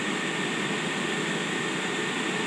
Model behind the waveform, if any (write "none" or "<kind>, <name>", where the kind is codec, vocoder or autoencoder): none